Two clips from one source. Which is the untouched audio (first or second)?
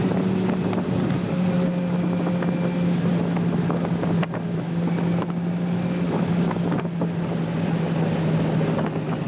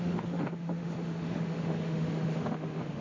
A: first